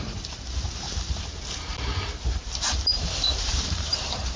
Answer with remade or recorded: remade